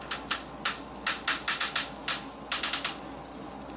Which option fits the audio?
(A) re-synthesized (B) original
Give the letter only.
B